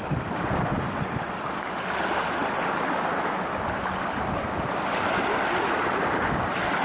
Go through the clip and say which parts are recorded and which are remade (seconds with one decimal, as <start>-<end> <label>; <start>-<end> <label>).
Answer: 0.0-6.8 recorded